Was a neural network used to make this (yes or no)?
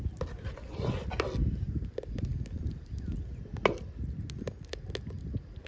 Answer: no